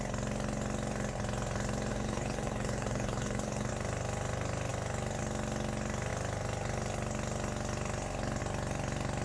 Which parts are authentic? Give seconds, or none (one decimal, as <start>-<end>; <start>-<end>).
0.0-1.9; 3.7-9.2